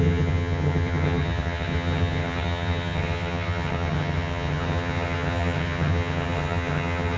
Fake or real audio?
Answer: fake